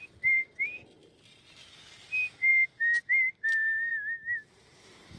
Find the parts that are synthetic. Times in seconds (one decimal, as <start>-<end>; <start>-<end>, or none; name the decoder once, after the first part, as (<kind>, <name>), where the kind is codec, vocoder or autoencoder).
none